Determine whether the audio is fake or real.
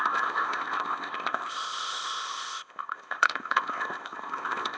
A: fake